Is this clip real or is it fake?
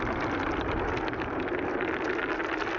real